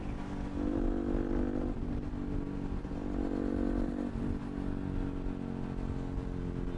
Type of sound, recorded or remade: recorded